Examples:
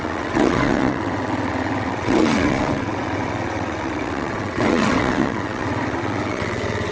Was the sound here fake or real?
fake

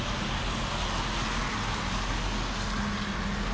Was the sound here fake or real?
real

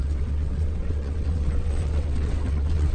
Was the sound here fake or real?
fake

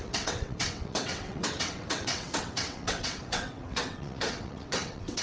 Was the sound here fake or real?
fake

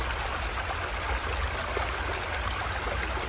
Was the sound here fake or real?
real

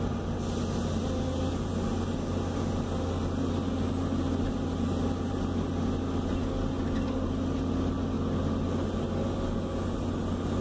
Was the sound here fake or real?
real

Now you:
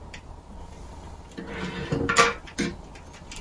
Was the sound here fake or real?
real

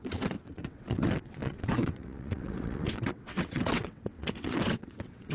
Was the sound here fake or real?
fake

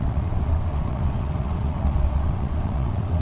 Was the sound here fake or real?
fake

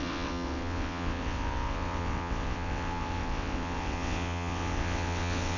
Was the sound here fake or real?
fake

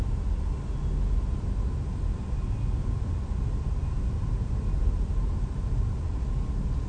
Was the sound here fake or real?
real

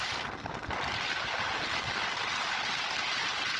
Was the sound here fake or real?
real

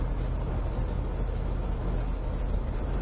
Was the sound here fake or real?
real